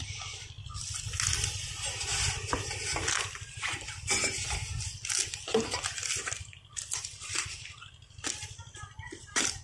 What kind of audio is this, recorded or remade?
recorded